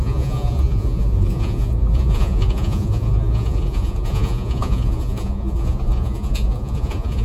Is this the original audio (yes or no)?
no